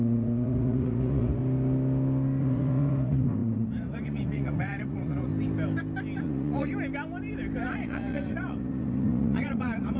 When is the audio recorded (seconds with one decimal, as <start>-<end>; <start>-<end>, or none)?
1.4-2.4; 5.3-6.2; 6.7-7.7